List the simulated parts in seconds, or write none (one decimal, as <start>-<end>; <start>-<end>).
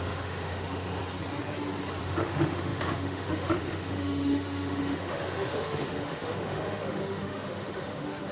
0.0-1.0; 2.0-8.3